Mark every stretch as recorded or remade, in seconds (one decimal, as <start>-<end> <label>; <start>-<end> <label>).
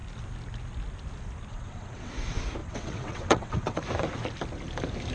0.0-1.5 recorded; 1.5-2.1 remade; 2.1-2.6 recorded; 2.6-3.8 remade; 3.8-5.1 recorded